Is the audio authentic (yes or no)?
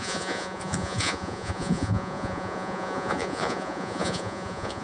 no